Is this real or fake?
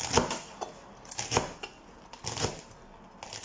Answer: real